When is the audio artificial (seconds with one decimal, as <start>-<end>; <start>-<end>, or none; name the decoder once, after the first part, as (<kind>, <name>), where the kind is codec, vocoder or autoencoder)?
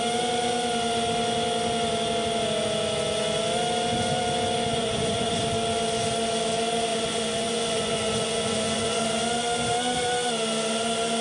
4.7-5.4 (vocoder, Vocos); 6.9-9.0